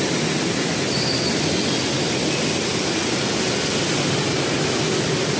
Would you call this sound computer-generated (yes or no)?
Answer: no